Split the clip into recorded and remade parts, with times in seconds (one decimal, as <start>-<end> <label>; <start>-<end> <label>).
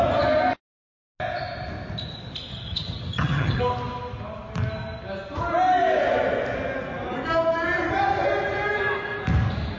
0.0-2.5 recorded; 2.5-3.6 remade; 3.6-9.8 recorded